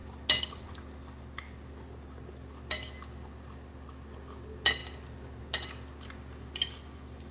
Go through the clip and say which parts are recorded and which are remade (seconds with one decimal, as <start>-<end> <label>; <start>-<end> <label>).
0.0-2.3 recorded; 2.3-4.8 remade; 4.8-7.3 recorded

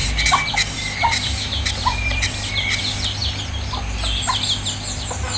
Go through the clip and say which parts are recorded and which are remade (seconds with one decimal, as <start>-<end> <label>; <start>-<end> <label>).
0.0-2.8 remade; 2.8-5.4 recorded